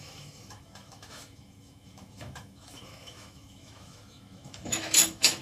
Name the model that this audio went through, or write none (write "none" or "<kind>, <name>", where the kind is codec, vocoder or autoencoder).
autoencoder, DAC-VAE